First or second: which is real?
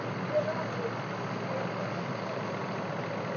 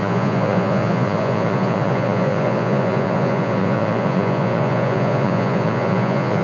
first